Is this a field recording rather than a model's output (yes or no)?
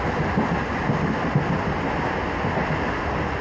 yes